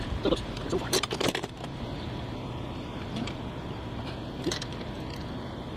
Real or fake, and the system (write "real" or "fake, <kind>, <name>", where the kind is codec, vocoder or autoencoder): fake, vocoder, BigVGAN v2